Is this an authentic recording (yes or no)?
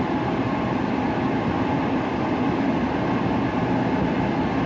yes